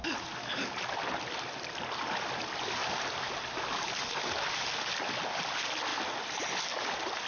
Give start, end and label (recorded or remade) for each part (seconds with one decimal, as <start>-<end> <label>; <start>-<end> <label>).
0.0-7.3 recorded